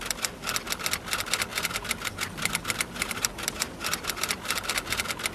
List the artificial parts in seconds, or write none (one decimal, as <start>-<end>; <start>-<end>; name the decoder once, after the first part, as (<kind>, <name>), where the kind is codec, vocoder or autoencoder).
1.5-4.7 (vocoder, BigVGAN v2)